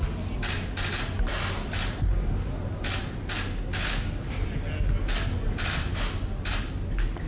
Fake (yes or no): no